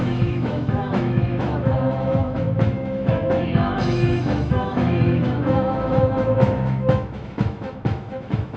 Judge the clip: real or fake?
fake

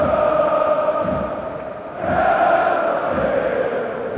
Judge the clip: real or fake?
real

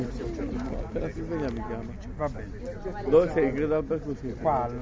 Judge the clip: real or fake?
real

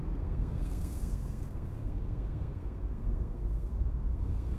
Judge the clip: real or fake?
fake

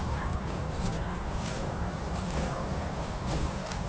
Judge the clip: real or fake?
fake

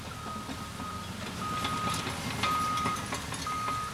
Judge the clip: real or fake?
real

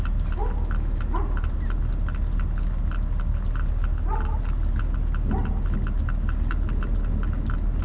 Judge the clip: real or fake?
real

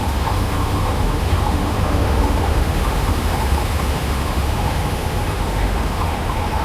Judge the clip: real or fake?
fake